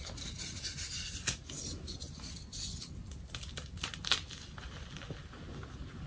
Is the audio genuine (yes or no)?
yes